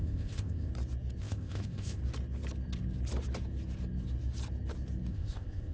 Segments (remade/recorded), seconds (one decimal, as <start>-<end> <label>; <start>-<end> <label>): 0.0-0.7 remade; 0.7-1.2 recorded; 1.2-2.0 remade; 2.0-5.1 recorded; 5.1-5.7 remade